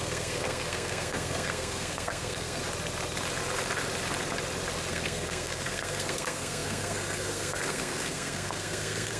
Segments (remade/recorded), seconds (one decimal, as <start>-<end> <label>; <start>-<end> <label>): 0.0-2.6 remade; 2.6-4.9 recorded; 4.9-9.2 remade